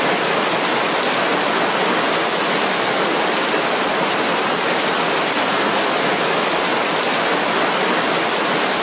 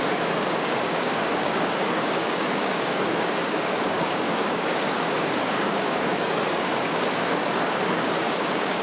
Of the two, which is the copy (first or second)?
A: second